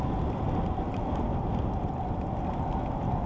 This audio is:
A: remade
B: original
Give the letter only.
B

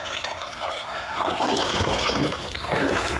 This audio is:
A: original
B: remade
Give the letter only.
B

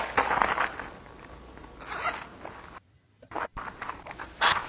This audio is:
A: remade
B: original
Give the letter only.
B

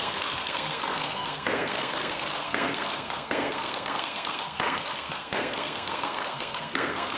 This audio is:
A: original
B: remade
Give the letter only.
B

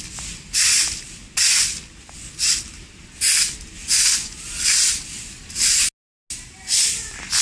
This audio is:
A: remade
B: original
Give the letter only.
B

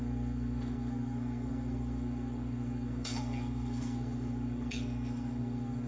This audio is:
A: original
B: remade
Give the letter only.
B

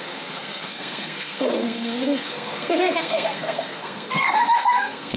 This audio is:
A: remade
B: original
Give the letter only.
A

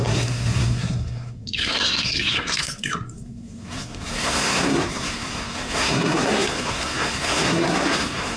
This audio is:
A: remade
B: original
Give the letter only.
A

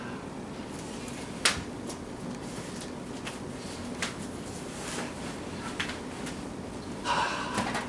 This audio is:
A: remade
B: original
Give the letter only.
B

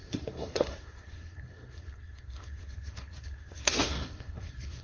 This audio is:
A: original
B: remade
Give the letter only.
B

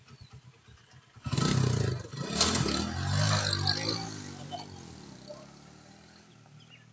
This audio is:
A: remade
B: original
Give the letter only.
B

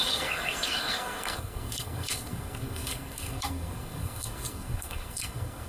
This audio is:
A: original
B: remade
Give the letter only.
B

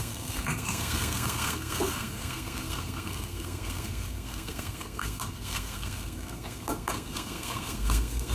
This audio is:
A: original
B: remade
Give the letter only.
B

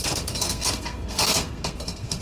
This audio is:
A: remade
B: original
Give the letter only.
A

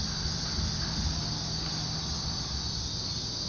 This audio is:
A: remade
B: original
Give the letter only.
B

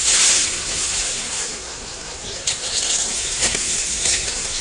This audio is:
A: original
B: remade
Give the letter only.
B